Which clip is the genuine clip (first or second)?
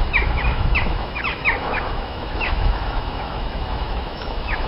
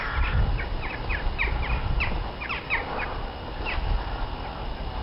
second